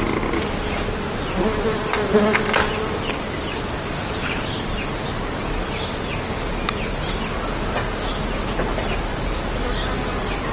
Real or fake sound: real